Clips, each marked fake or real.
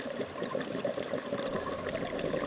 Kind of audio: real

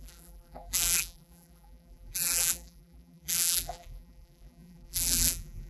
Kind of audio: fake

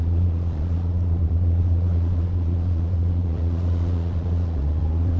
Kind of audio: fake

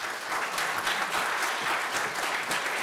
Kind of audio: real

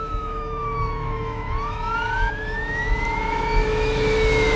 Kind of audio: fake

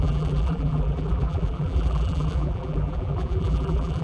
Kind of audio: fake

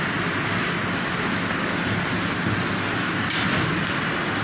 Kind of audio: real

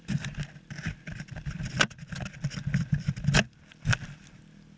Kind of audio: real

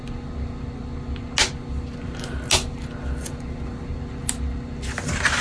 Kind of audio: real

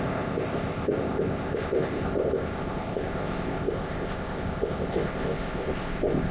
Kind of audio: fake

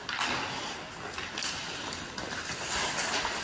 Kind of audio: real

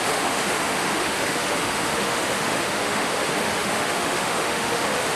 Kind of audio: fake